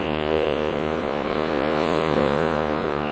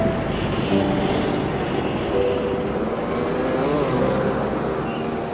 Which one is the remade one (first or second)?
first